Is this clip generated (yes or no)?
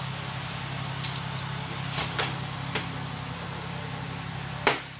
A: no